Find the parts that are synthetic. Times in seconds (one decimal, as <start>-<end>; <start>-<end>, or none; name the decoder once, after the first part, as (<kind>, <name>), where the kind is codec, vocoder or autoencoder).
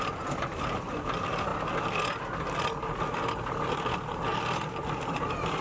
none